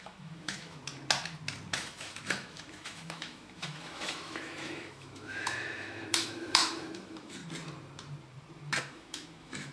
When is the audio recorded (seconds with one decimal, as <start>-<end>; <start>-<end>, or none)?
0.8-1.7; 7.4-8.8